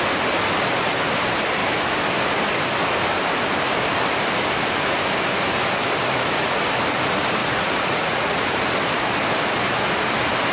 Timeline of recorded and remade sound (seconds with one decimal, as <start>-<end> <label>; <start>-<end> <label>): 0.0-7.4 recorded; 7.4-8.5 remade; 8.5-10.5 recorded